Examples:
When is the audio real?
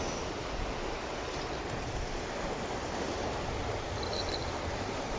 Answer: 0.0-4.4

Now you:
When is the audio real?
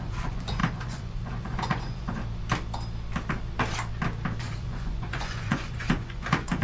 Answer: 2.2-4.4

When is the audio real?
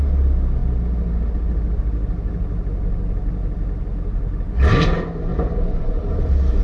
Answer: 0.0-5.3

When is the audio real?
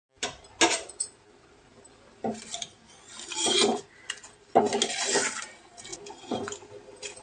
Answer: 0.0-7.2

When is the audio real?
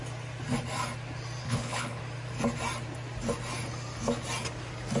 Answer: 0.0-1.4; 2.0-5.0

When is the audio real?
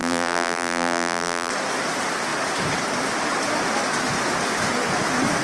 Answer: 1.5-5.4